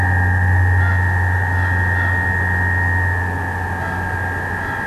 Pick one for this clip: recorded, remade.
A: recorded